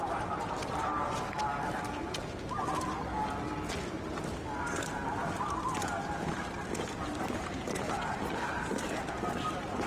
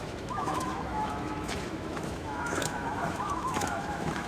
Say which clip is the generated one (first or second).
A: second